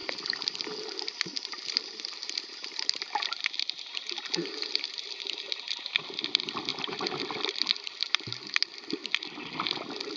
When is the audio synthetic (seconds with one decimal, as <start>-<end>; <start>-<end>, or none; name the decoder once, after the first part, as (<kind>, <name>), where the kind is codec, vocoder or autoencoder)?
none

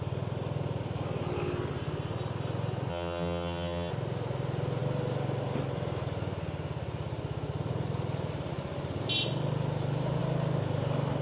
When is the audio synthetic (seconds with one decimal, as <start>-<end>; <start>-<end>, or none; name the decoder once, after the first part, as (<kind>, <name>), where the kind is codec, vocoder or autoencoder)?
2.9-3.9 (vocoder, HiFi-GAN)

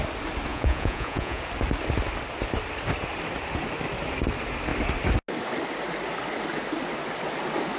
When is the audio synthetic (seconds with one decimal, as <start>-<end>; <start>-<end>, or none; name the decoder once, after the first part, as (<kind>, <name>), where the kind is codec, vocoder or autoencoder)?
0.5-1.4 (vocoder, Vocos)

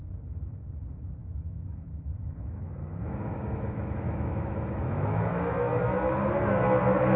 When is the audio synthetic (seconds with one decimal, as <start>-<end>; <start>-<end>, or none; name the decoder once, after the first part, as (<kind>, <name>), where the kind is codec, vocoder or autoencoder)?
1.2-5.5 (autoencoder, DAC-VAE)

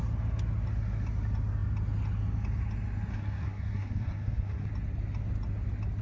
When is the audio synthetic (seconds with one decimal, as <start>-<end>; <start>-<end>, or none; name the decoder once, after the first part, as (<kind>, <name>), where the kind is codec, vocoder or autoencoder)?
3.1-4.7 (codec, SNAC)